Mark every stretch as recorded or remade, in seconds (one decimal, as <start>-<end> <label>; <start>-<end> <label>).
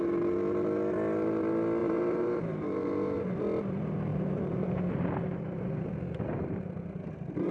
0.0-1.8 recorded; 1.8-3.3 remade; 3.3-4.1 recorded; 4.1-6.6 remade; 6.6-7.5 recorded